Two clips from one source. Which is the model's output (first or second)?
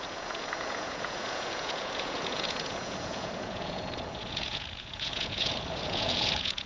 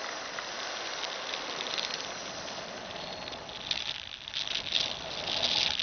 first